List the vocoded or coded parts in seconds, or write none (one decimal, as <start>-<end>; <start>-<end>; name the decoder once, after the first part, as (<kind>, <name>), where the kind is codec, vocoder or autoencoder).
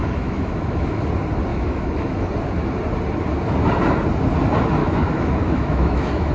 0.0-1.0 (autoencoder, DAC-VAE); 1.5-2.3; 4.8-6.3